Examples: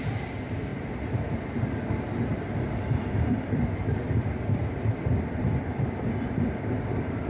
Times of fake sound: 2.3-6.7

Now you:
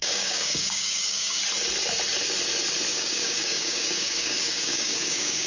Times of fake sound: 0.0-1.4; 2.9-5.5